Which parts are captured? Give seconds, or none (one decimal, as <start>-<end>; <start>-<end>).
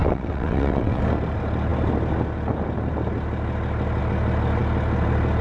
1.0-5.4